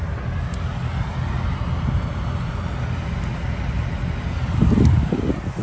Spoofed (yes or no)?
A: no